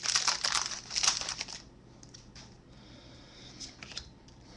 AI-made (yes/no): no